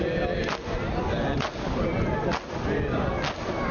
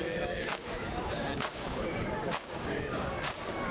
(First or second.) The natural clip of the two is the first